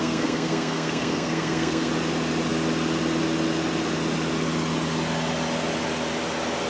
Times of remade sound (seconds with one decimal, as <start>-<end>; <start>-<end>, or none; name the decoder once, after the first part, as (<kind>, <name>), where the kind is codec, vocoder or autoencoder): 0.0-1.9 (codec, SNAC)